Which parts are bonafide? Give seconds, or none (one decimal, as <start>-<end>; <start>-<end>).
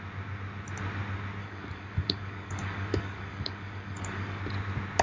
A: 0.0-1.4; 4.4-5.0